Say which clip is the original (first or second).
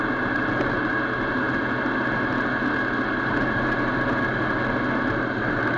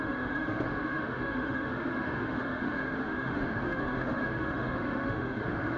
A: first